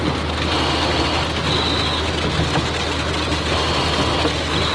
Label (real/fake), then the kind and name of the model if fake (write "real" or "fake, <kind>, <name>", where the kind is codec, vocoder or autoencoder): real